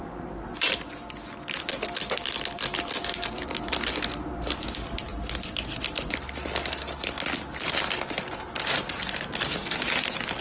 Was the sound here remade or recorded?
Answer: recorded